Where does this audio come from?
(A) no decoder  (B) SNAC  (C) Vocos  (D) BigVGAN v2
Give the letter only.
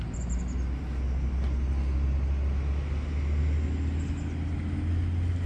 A